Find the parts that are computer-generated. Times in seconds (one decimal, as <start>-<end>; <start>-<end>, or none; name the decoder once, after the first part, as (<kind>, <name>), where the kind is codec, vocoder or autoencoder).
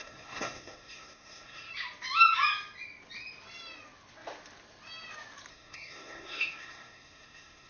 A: 0.0-1.7 (codec, SNAC); 5.5-7.7